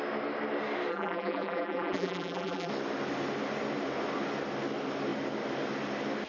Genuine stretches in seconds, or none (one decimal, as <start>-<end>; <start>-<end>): 0.0-0.9; 2.7-6.3